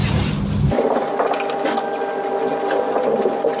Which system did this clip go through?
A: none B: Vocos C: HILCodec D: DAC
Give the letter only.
A